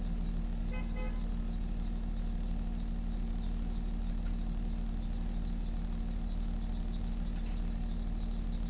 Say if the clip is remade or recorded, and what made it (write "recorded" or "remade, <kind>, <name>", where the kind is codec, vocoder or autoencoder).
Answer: recorded